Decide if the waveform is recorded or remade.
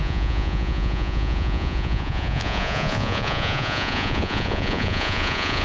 remade